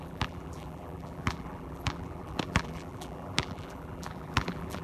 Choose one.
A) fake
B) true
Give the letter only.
A